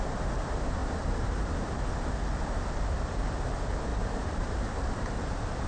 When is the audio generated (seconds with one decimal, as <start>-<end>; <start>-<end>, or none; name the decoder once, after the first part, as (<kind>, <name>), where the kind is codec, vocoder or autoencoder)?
0.8-1.9 (vocoder, BigVGAN v2); 3.9-5.1